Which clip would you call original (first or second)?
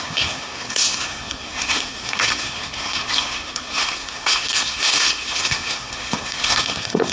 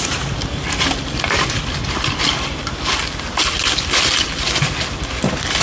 second